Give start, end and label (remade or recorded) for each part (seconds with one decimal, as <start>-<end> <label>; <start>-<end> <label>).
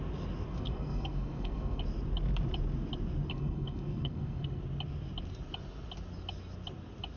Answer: 0.0-0.5 recorded; 0.5-1.8 remade; 1.8-3.3 recorded; 3.3-4.6 remade; 4.6-7.2 recorded